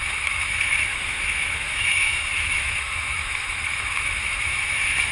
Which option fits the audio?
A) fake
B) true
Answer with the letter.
A